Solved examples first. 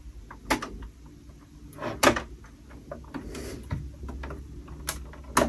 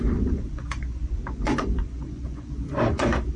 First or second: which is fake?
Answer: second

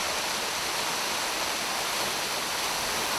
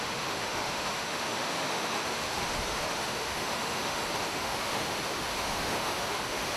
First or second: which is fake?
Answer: second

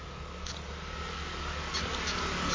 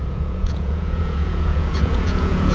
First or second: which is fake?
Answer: second